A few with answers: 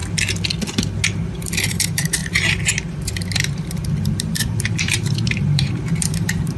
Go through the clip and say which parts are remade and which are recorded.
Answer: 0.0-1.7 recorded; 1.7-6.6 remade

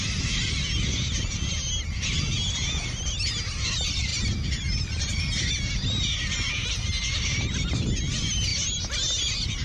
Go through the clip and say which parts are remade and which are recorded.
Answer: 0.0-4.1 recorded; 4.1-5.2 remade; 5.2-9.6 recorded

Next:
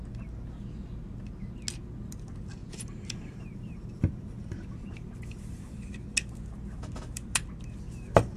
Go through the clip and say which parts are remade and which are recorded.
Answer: 0.0-2.6 recorded; 2.6-5.9 remade; 5.9-8.4 recorded

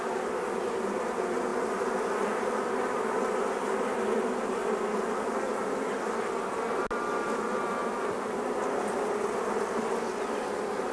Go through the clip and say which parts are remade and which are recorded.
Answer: 0.0-7.8 recorded; 7.8-8.7 remade; 8.7-10.9 recorded